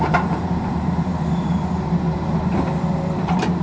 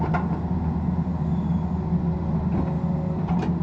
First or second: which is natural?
second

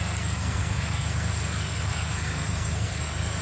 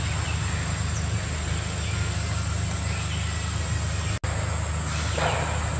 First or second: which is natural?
second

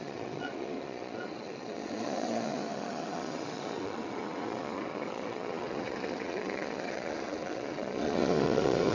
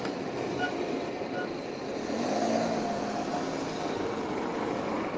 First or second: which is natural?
second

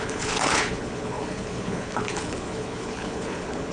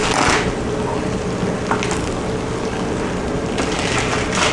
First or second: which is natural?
second